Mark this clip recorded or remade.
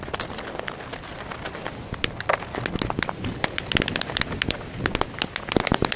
recorded